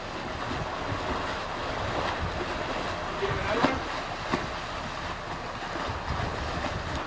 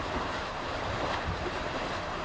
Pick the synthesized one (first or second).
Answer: second